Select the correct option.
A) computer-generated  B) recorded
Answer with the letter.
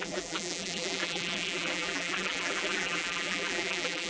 A